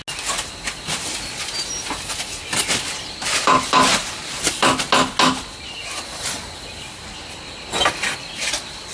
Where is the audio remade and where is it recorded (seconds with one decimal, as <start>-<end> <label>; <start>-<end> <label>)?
0.0-3.9 recorded; 3.9-4.7 remade; 4.7-8.9 recorded